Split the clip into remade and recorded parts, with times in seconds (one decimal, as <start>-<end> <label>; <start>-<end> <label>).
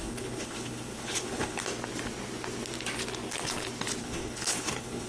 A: 0.0-1.6 remade; 1.6-4.0 recorded; 4.0-5.1 remade